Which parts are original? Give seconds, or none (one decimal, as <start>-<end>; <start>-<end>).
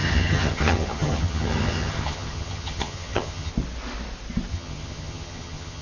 3.5-4.5